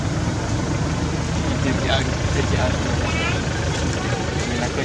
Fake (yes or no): no